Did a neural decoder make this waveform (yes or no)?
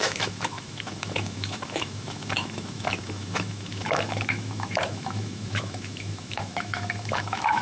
yes